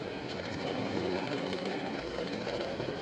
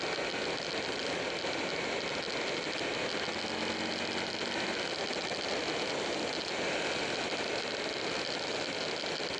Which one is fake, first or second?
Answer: first